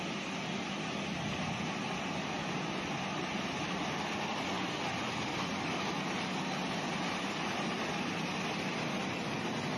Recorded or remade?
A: recorded